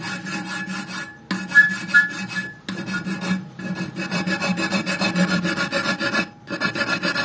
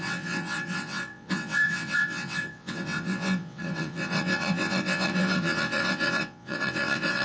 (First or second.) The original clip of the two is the first